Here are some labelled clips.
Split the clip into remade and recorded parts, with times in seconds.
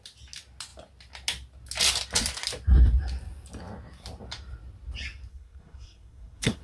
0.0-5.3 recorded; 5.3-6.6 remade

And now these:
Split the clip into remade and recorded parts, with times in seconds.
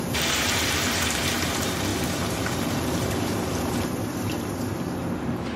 0.0-5.6 remade